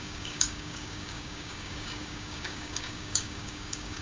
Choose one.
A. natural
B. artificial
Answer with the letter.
B